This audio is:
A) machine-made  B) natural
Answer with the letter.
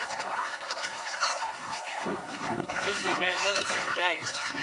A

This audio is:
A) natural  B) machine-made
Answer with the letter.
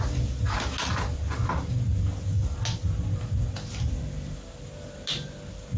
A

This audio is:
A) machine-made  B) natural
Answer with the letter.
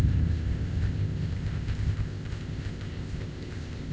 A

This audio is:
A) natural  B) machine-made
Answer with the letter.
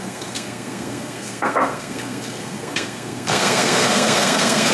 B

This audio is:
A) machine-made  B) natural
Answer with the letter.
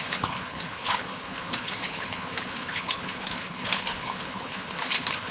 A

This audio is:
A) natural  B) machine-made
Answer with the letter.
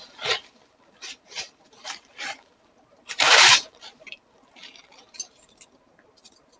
B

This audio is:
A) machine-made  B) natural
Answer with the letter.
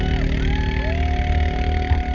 B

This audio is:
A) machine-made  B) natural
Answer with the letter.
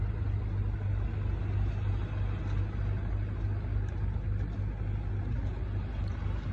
B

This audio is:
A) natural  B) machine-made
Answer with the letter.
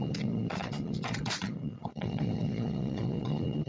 B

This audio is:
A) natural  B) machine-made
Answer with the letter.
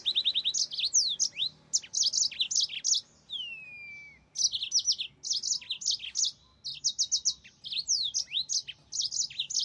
A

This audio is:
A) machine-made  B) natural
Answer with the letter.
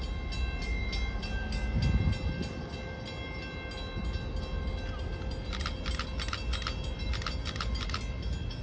B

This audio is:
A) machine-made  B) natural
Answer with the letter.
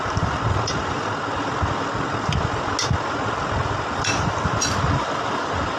B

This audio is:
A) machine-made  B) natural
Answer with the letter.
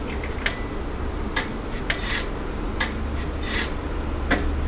B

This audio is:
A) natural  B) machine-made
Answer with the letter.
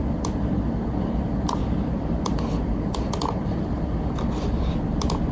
A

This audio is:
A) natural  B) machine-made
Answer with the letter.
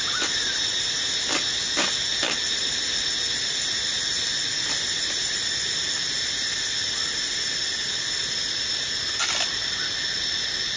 A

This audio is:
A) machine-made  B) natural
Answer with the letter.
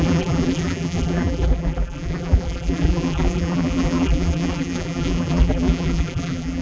A